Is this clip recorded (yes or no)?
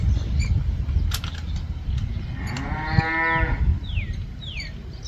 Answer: yes